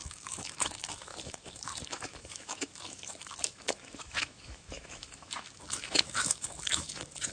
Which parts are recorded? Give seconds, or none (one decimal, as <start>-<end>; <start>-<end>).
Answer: none